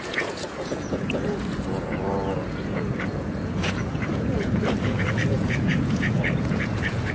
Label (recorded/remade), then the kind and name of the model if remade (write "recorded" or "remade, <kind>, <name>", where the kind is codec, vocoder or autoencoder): remade, vocoder, Vocos